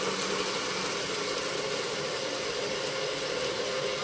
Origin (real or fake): real